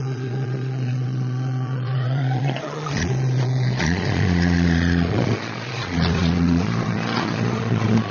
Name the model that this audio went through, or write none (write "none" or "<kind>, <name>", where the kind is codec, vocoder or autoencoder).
vocoder, Vocos